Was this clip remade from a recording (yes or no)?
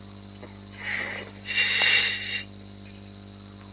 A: no